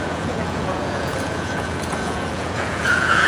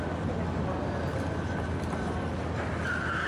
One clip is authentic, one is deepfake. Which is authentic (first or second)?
second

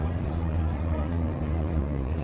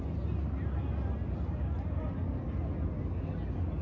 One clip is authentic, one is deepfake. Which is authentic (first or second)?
second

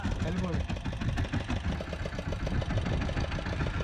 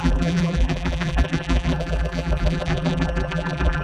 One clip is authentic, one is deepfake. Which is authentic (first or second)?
first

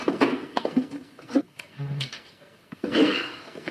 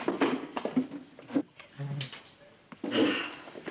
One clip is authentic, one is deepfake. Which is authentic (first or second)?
second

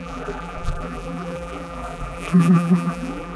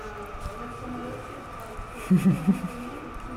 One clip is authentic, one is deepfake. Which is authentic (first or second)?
second